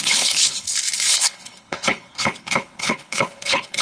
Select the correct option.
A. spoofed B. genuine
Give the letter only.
A